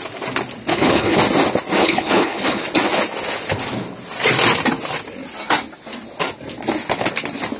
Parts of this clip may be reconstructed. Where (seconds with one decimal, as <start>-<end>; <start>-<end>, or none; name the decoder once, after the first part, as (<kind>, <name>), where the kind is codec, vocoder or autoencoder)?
0.7-1.2 (codec, HILCodec); 1.8-2.6